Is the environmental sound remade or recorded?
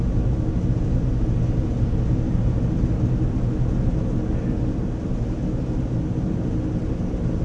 recorded